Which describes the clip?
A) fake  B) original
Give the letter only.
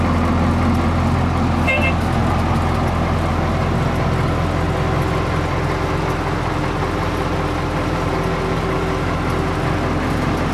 B